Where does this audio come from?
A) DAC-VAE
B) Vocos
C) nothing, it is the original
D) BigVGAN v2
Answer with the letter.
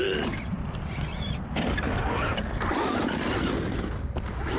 D